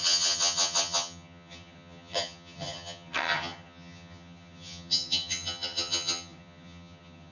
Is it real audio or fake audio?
fake